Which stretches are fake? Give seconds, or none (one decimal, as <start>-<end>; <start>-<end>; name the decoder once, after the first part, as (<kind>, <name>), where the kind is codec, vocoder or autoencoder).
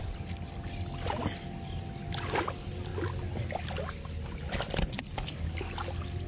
none